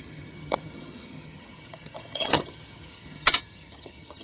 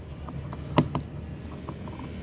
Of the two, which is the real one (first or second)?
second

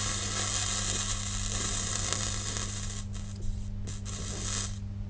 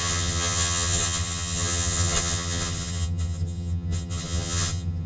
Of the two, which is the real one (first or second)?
first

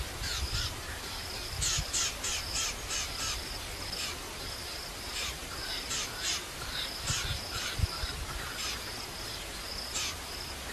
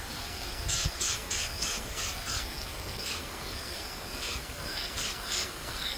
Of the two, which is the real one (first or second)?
first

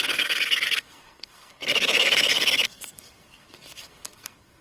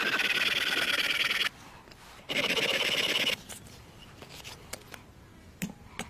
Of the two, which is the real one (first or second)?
second